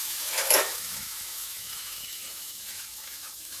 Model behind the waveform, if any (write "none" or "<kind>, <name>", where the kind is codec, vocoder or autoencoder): autoencoder, DAC-VAE